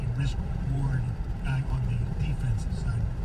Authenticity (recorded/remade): remade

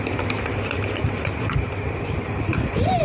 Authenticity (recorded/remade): remade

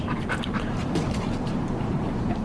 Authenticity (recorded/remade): remade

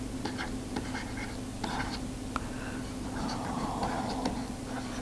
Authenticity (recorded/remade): remade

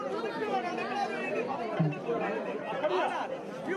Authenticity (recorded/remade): recorded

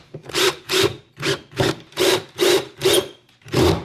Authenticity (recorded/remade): remade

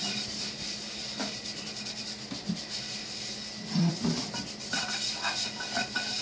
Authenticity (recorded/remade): remade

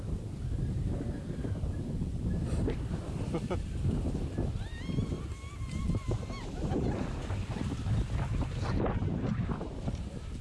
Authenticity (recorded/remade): recorded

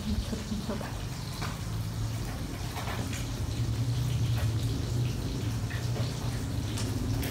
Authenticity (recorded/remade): recorded